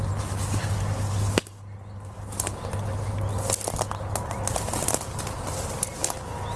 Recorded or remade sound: recorded